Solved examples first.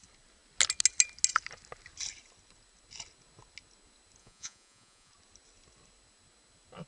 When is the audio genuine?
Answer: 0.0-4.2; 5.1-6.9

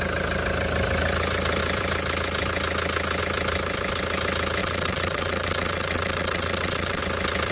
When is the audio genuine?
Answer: 0.0-4.6; 7.0-7.5

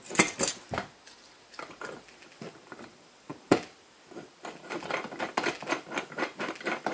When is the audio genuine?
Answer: 0.0-6.9

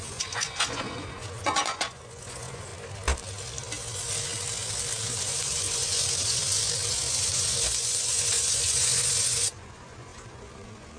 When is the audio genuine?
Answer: 2.7-5.2; 6.4-6.9

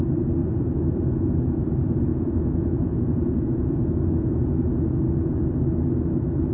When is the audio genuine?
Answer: 0.0-0.4; 1.7-2.1; 5.5-6.5